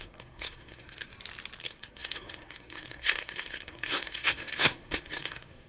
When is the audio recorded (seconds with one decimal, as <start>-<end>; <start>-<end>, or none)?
1.1-1.6